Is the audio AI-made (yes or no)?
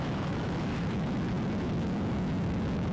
yes